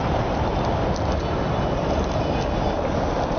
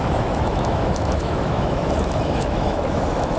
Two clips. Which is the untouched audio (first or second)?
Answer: first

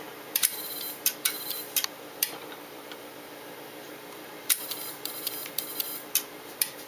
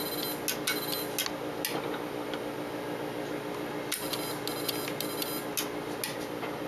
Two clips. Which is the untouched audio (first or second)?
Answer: second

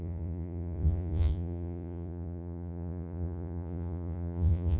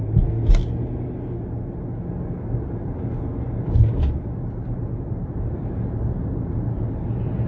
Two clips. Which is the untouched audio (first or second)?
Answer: second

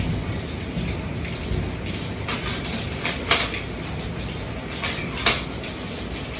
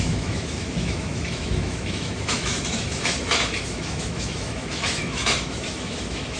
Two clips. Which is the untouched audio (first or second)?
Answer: first